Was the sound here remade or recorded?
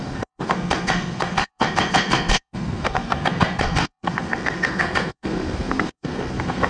remade